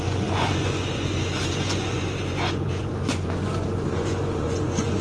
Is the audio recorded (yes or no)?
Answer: no